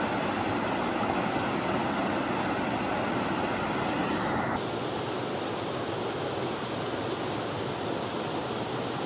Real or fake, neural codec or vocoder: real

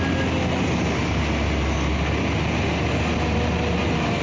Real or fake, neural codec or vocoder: real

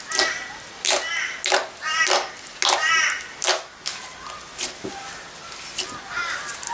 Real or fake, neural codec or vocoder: real